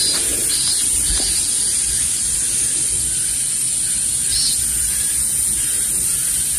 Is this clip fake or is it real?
real